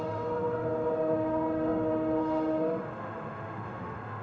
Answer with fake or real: fake